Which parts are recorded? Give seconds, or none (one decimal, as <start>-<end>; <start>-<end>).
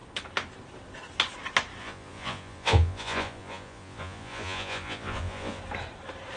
0.0-1.8; 5.6-6.4